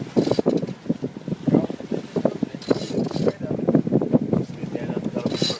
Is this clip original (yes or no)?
yes